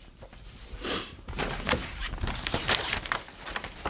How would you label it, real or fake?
fake